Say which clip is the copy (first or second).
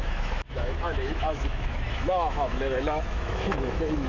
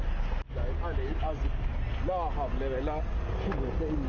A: first